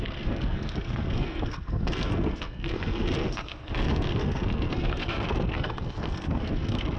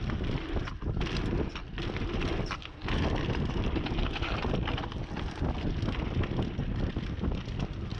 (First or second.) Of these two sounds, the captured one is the second